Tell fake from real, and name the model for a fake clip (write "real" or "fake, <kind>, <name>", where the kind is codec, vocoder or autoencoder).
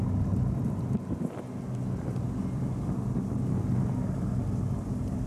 real